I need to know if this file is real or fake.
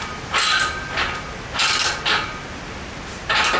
real